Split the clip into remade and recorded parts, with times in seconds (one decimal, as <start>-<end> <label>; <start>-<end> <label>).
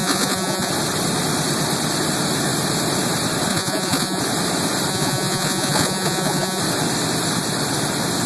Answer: 0.0-0.7 remade; 0.7-3.5 recorded; 3.5-4.2 remade; 4.2-4.9 recorded; 4.9-6.6 remade; 6.6-8.3 recorded